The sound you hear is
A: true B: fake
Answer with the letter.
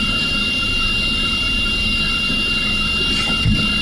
A